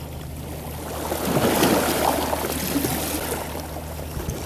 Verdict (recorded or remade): recorded